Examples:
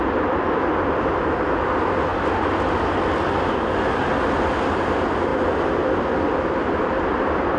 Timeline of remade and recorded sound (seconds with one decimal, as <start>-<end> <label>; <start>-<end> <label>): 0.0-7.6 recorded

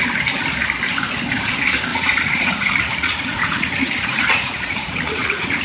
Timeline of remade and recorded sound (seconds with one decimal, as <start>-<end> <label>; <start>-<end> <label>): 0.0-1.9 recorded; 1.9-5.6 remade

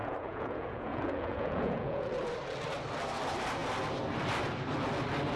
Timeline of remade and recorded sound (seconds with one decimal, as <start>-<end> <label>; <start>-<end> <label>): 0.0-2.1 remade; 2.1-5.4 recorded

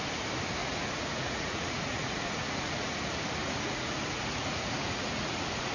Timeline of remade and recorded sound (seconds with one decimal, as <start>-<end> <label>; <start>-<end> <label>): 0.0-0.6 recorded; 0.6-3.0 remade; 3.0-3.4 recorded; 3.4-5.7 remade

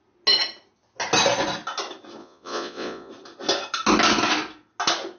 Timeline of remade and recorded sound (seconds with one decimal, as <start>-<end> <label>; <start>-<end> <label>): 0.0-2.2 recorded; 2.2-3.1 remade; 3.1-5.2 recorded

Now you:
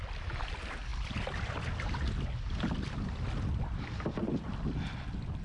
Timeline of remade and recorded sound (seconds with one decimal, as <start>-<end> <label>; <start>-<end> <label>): 0.0-5.4 recorded